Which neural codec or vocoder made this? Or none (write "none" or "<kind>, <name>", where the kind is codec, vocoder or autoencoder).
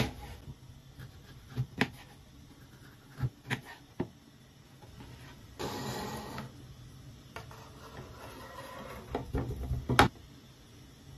none